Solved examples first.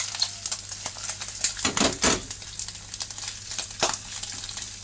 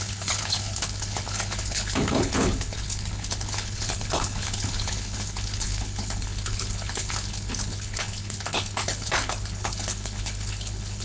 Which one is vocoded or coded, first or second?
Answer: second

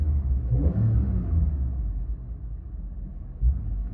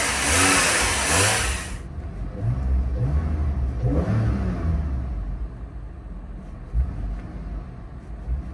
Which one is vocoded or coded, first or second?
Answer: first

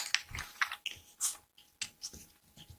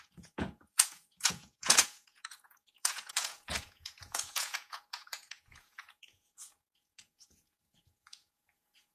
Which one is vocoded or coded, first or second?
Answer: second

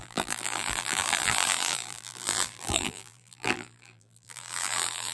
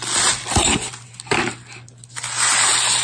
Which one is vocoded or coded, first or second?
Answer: first